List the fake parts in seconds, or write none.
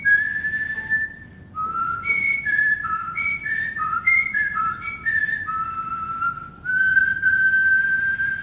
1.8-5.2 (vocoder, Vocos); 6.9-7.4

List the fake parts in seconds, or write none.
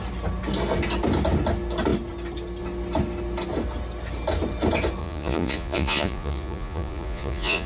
5.0-7.7 (vocoder, Vocos)